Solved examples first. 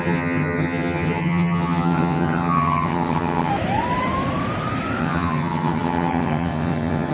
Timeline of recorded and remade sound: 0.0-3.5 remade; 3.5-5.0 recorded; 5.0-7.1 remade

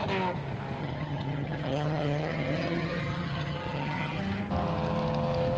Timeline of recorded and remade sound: 0.0-0.8 recorded; 0.8-4.2 remade; 4.2-5.6 recorded

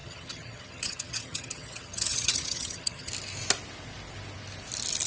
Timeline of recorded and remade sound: 0.0-3.1 remade; 3.1-5.1 recorded

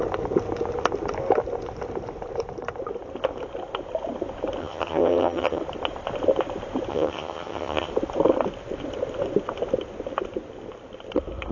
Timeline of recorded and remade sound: 0.0-4.6 recorded; 4.6-5.6 remade; 5.6-6.9 recorded; 6.9-7.9 remade; 7.9-11.5 recorded